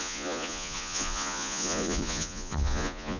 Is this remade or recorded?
remade